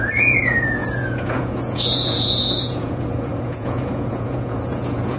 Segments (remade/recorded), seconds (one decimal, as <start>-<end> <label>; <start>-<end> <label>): 0.0-5.2 remade